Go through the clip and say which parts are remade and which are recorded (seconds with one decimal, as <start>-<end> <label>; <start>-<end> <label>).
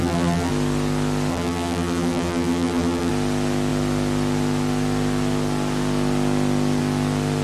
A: 0.0-0.5 remade; 0.5-1.3 recorded; 1.3-3.1 remade; 3.1-7.4 recorded